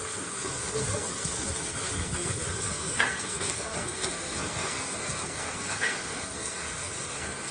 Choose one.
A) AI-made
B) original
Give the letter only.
A